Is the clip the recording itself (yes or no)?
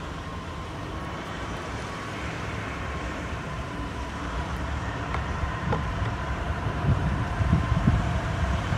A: no